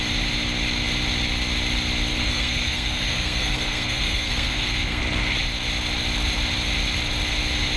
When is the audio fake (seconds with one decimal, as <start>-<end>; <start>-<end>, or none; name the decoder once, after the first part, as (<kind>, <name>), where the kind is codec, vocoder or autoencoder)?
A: 2.1-5.0 (codec, SNAC)